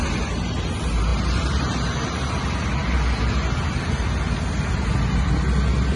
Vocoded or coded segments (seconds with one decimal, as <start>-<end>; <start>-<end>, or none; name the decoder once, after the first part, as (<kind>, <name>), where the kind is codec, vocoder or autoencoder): none